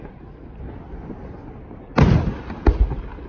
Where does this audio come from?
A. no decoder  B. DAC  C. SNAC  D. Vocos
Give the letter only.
A